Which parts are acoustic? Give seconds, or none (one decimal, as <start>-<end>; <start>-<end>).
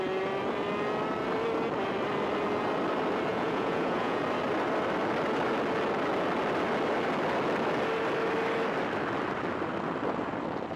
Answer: 0.0-3.3; 4.2-10.8